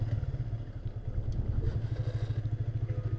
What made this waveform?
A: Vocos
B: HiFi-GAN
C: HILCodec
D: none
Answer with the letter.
D